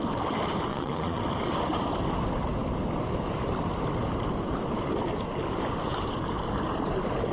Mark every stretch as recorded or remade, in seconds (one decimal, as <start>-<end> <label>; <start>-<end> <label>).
0.0-0.7 recorded; 0.7-1.2 remade; 1.2-7.3 recorded